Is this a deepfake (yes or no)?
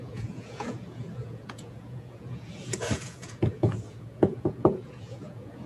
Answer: yes